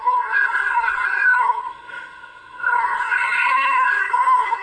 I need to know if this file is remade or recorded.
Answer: remade